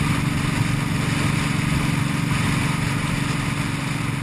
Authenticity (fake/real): real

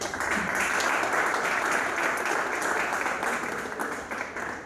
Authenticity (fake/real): real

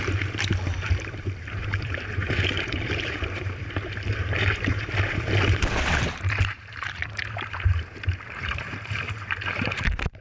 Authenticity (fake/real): fake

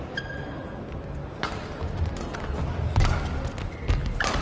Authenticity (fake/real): real